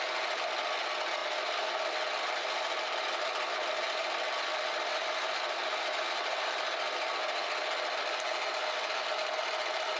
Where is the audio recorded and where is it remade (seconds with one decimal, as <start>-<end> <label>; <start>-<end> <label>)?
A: 0.0-10.0 recorded